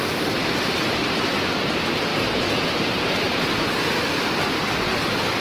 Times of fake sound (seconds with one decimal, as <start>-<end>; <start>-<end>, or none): 0.4-1.6; 2.1-3.7